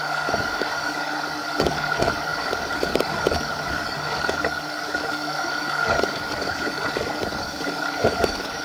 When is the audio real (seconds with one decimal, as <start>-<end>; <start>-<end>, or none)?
none